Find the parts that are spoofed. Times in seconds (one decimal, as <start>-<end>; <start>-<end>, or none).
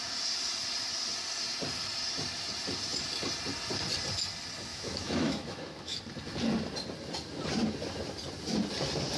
4.7-6.0